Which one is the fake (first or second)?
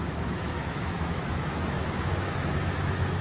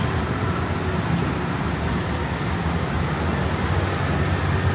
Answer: first